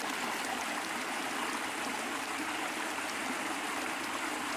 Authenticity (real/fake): real